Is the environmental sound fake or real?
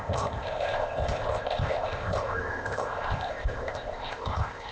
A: fake